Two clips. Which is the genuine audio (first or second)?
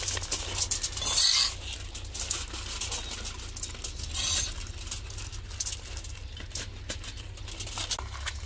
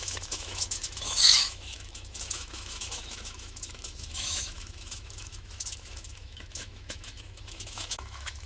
first